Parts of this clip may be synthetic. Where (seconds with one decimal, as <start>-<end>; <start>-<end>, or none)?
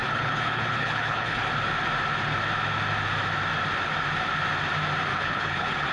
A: 0.0-1.5; 5.1-5.9